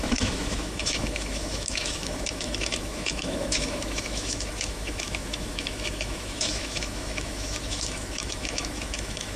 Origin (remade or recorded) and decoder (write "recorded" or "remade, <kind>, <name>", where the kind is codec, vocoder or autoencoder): remade, autoencoder, DAC-VAE